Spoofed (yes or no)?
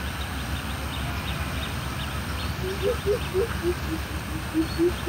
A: no